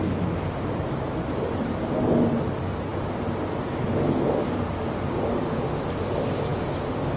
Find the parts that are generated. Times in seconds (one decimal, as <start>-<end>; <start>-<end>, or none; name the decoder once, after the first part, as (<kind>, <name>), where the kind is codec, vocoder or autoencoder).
none